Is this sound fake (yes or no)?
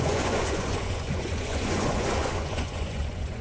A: yes